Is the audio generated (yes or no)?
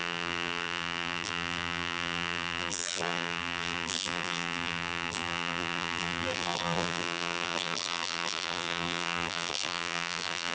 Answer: yes